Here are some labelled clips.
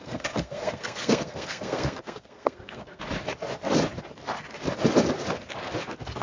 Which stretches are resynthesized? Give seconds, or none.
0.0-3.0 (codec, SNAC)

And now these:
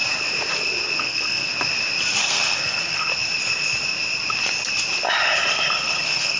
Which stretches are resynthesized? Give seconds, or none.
1.0-1.5 (codec, SNAC); 2.2-3.1; 6.0-6.4

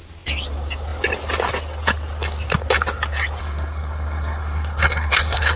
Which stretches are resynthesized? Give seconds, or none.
3.4-5.6 (codec, SNAC)